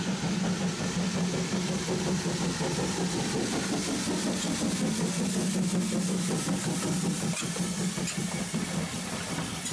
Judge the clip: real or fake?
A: real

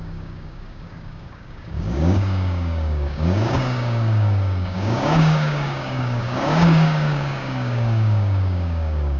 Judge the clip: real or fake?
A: fake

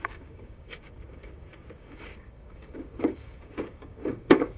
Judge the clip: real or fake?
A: fake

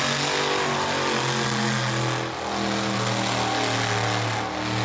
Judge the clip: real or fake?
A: real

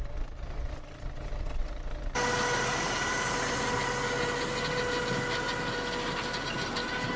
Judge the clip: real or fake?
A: real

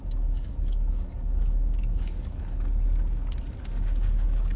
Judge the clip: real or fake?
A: fake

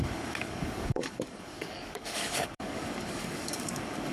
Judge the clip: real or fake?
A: fake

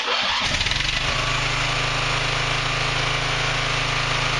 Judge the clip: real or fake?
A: real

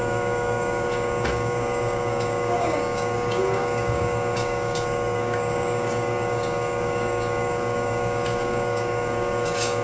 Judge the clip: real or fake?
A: fake